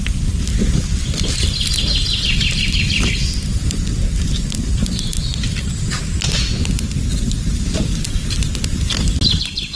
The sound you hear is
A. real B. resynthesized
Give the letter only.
A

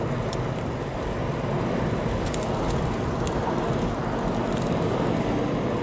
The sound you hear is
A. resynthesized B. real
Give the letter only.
B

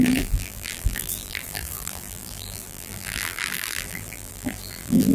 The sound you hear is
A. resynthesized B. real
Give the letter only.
A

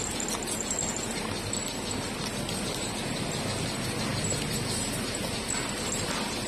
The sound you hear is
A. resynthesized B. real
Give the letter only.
B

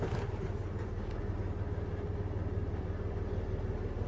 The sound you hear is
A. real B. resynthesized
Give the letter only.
A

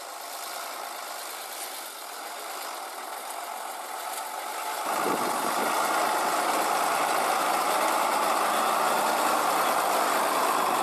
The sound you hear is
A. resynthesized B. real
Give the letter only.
A